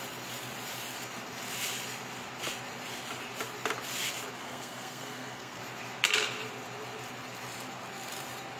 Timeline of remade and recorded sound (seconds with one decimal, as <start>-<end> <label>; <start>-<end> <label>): 0.0-4.4 recorded; 4.4-5.6 remade; 5.6-8.6 recorded